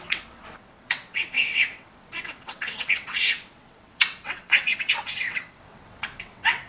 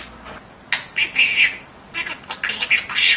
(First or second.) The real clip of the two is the second